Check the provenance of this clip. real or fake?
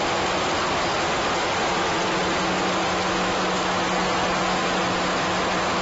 real